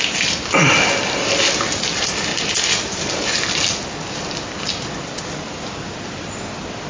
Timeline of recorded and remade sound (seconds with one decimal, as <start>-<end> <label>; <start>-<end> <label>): 0.0-6.9 recorded